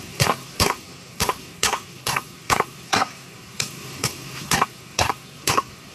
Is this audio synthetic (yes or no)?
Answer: yes